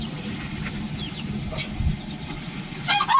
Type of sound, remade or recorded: recorded